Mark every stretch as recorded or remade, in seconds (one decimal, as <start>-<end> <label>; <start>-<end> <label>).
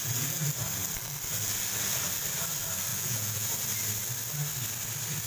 0.0-2.9 recorded; 2.9-3.5 remade; 3.5-5.3 recorded